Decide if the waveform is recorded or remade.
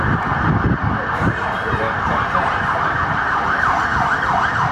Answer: recorded